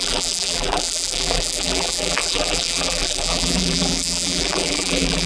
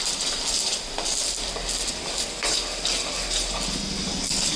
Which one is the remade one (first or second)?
first